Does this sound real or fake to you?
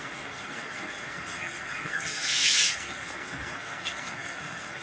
fake